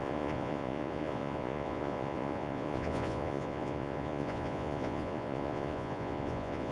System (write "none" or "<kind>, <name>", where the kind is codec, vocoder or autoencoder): vocoder, Vocos